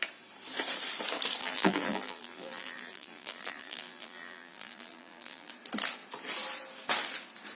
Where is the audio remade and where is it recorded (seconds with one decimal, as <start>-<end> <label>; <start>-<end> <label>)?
0.0-1.4 recorded; 1.4-5.5 remade; 5.5-7.6 recorded